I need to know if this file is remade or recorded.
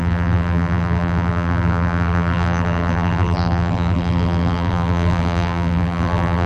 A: remade